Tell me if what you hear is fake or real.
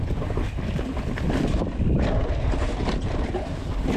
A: real